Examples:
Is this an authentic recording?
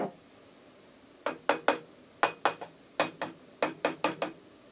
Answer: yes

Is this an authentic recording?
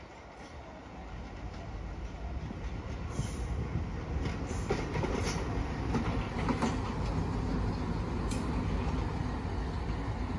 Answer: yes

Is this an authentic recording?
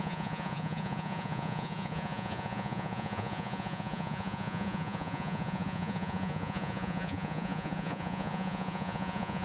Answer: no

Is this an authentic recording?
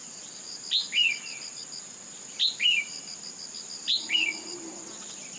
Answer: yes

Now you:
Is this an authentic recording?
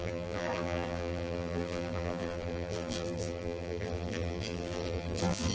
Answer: no